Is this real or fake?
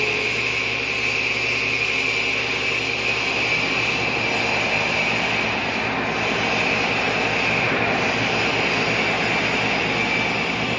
real